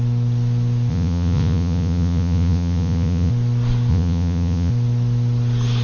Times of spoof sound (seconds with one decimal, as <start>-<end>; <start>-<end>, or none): 0.9-3.3; 3.9-4.7